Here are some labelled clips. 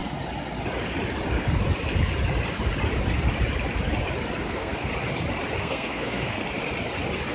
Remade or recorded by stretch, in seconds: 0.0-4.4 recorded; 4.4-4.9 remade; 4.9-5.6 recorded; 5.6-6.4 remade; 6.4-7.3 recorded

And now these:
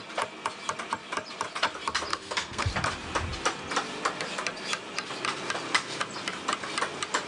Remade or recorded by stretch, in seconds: 0.0-2.1 recorded; 2.1-2.7 remade; 2.7-7.3 recorded